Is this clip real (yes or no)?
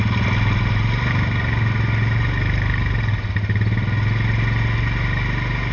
yes